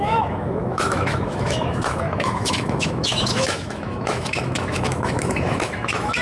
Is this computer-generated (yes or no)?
yes